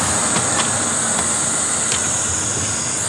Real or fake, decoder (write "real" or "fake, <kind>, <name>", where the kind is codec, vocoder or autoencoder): real